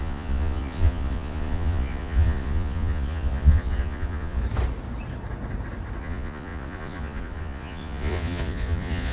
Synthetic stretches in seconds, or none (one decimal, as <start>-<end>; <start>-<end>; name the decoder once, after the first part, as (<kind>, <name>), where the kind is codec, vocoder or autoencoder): 0.0-4.4 (vocoder, Vocos); 6.0-9.1